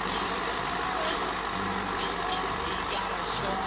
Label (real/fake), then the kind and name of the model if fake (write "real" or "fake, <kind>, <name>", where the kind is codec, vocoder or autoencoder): real